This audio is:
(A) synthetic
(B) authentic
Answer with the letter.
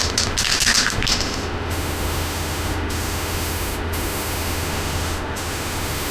A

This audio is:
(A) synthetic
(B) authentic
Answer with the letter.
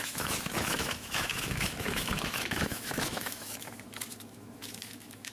A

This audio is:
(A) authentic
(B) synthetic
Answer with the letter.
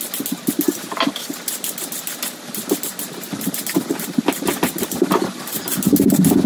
A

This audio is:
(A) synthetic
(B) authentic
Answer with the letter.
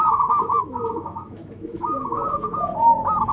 A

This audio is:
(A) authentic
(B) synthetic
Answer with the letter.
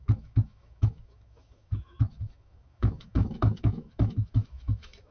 B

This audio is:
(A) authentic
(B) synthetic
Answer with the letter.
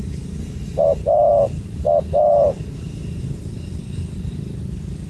A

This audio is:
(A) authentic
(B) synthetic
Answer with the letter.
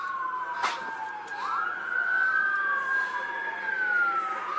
A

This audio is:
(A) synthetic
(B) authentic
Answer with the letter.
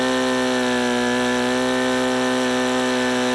B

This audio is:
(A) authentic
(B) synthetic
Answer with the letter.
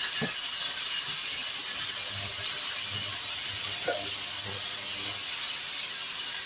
A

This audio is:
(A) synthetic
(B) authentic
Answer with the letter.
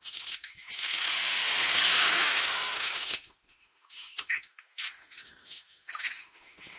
A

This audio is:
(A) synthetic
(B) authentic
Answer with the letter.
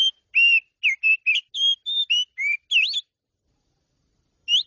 B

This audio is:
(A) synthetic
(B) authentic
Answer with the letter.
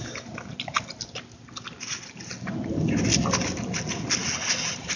B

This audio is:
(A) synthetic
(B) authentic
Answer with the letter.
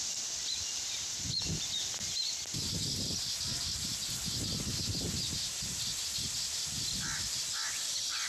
B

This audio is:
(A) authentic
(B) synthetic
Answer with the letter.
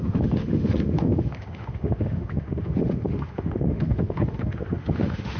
B